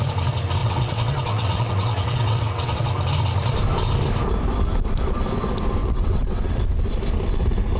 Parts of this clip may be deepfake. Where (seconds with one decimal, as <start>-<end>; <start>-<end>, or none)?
0.6-2.9; 5.8-6.6